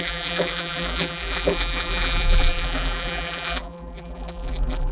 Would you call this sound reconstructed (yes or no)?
yes